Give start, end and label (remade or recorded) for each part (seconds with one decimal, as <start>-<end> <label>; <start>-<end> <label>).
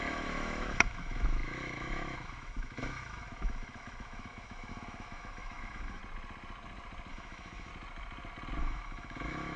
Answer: 0.0-6.0 remade; 6.0-7.1 recorded; 7.1-7.7 remade; 7.7-8.6 recorded; 8.6-9.6 remade